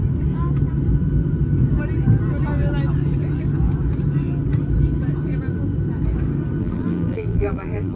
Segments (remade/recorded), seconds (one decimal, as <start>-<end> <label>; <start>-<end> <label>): 0.0-6.6 recorded; 6.6-8.0 remade